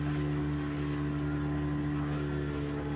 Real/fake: real